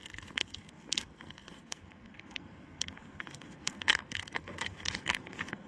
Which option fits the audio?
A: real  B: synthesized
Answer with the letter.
B